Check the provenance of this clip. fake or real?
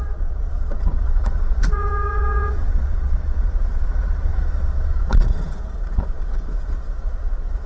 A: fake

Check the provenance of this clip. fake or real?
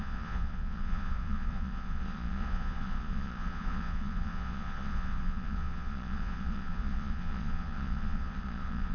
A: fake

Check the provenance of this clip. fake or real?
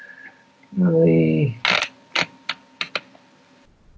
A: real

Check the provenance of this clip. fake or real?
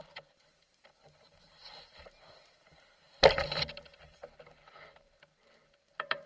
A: real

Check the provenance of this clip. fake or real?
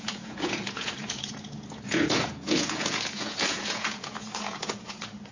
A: fake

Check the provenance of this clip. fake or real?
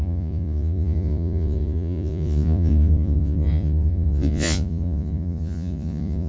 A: fake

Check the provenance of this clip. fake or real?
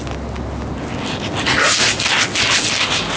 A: real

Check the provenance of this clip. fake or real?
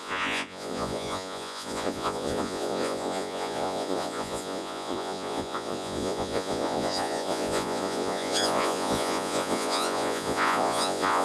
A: fake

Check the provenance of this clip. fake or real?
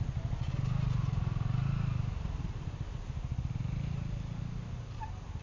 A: real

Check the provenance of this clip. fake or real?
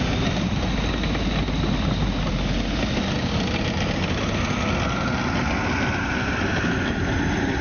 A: real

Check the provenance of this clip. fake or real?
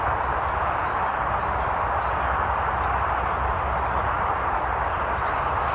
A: real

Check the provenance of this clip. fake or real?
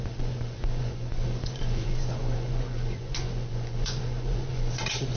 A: fake